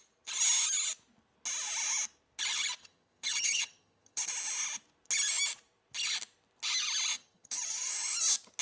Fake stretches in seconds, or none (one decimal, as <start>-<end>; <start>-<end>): 2.8-4.3; 7.1-7.9